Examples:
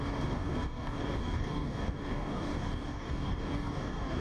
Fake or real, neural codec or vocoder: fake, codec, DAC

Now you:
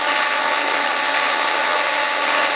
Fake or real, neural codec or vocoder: fake, vocoder, HiFi-GAN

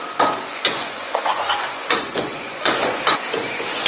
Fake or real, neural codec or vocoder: fake, vocoder, Vocos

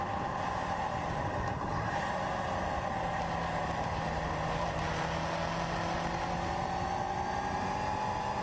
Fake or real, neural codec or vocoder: real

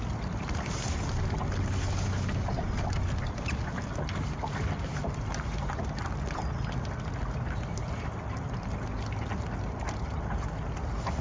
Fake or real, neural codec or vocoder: real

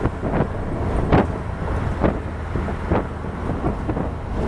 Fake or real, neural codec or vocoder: real